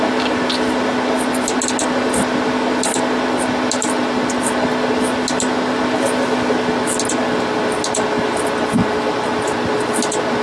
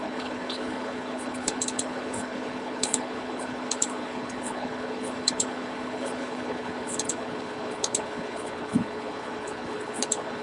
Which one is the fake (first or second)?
second